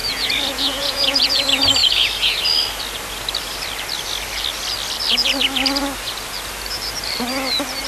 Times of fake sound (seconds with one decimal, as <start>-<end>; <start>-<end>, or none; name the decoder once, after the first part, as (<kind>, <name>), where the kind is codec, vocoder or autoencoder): 0.0-1.4 (vocoder, Vocos); 1.8-2.4